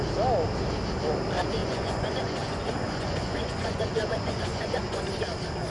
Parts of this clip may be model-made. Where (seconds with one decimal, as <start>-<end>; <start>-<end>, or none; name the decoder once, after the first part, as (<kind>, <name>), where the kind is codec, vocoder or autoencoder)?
1.6-5.0 (vocoder, Vocos)